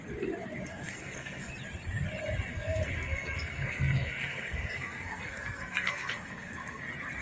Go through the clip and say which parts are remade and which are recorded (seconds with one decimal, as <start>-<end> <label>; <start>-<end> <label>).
0.0-0.7 recorded; 0.7-1.5 remade; 1.5-2.5 recorded; 2.5-6.8 remade; 6.8-7.2 recorded